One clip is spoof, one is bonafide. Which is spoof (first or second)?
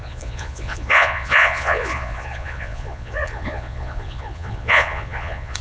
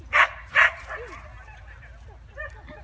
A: first